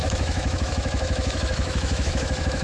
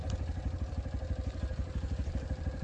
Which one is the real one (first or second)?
second